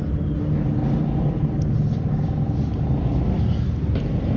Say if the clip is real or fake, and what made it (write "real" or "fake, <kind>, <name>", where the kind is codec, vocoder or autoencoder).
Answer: real